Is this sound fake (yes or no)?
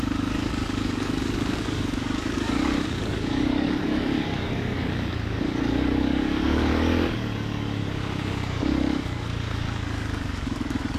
yes